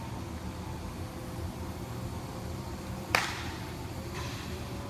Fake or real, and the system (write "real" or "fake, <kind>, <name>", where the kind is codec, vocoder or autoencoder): fake, vocoder, BigVGAN v2